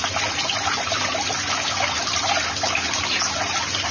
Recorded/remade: recorded